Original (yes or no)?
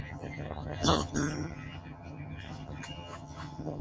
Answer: no